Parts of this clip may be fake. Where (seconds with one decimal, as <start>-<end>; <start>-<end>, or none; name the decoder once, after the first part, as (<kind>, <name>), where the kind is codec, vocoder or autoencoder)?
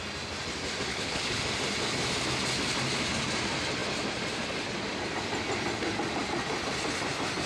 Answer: 0.9-1.4 (codec, HILCodec)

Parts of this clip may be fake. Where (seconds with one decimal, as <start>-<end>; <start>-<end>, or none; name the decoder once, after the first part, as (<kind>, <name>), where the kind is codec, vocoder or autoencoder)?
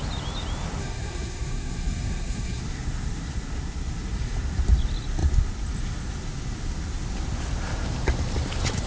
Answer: 0.8-2.6 (codec, SNAC)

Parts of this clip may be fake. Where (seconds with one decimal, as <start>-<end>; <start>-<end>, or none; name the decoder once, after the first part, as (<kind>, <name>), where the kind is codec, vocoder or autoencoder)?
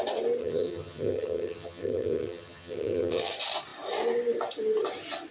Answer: 0.4-3.3 (vocoder, HiFi-GAN)